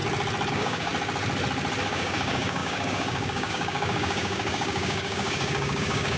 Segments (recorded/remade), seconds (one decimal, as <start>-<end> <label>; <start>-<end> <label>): 0.0-0.5 recorded; 0.5-0.9 remade; 0.9-1.9 recorded; 1.9-6.2 remade